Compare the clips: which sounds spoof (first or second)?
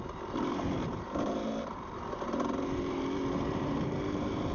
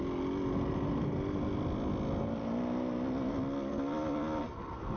first